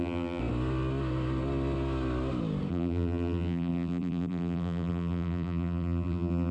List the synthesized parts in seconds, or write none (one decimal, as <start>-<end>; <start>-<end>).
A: 0.0-0.4; 2.7-6.5